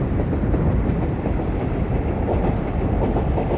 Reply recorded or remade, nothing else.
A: recorded